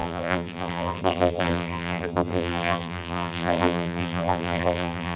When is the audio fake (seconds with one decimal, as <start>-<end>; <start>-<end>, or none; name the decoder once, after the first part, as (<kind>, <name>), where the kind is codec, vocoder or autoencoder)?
0.0-5.2 (vocoder, BigVGAN v2)

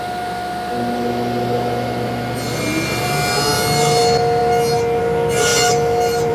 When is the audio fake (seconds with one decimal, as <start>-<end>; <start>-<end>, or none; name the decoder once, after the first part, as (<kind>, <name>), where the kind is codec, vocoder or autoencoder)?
none